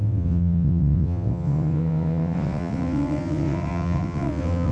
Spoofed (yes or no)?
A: yes